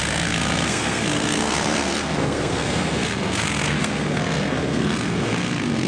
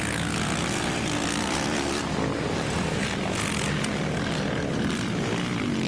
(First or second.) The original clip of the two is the second